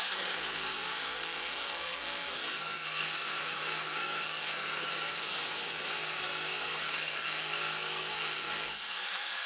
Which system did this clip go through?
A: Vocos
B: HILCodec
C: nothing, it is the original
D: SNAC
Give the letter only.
D